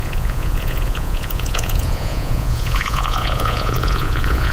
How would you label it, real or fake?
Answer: fake